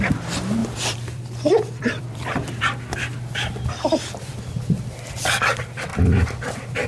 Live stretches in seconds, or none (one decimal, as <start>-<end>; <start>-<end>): 0.0-0.6; 4.4-6.9